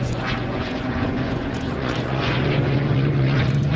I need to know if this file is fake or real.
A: fake